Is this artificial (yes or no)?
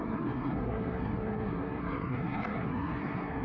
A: yes